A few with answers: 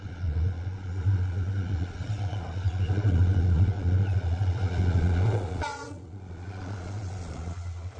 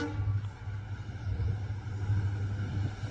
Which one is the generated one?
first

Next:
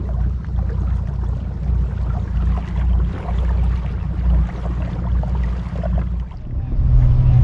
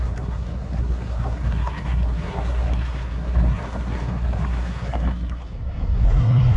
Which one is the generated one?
second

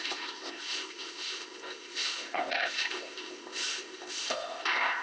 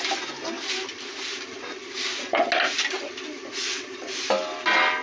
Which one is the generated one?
first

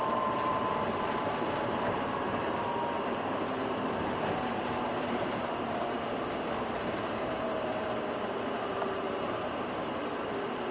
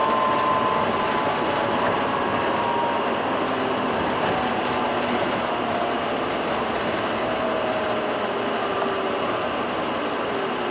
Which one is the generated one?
first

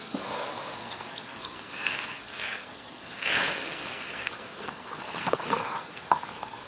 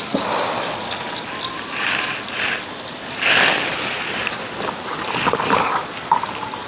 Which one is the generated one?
first